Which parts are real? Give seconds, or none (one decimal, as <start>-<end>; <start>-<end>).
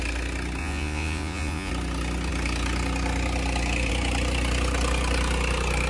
0.0-0.6; 1.7-5.9